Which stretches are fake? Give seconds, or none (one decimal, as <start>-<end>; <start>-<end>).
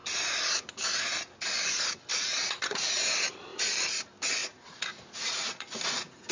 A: 2.1-2.9; 4.4-6.3